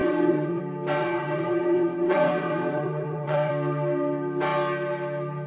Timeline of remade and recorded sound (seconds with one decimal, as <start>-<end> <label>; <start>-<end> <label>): 0.0-0.6 remade; 0.6-1.0 recorded; 1.0-3.5 remade; 3.5-5.5 recorded